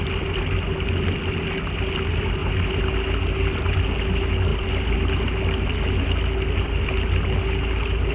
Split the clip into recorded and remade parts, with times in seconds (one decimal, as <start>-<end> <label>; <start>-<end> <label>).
0.0-8.1 recorded